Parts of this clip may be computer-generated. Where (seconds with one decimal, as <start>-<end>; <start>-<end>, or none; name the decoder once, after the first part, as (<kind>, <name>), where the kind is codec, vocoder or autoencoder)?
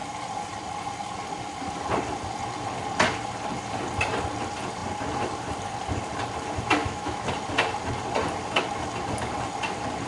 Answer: 6.8-7.3 (autoencoder, DAC-VAE)